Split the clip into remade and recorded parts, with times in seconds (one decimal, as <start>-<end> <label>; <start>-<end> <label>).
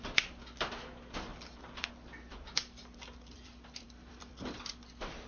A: 0.0-1.3 recorded; 1.3-1.9 remade; 1.9-2.3 recorded; 2.3-4.7 remade; 4.7-5.3 recorded